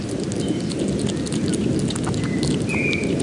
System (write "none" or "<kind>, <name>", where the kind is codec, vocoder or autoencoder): none